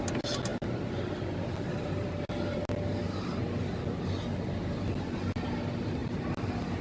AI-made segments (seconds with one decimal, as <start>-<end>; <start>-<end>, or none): none